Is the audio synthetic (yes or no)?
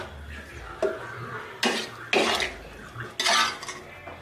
no